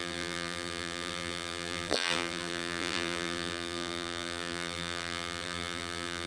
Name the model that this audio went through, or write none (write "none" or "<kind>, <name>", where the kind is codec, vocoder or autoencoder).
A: vocoder, BigVGAN v2